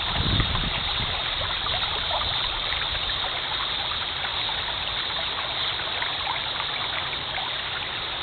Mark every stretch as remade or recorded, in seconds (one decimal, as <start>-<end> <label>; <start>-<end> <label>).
0.0-8.2 recorded